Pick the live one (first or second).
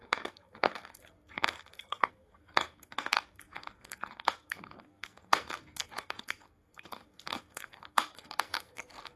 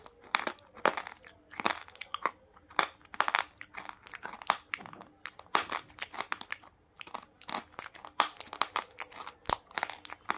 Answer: second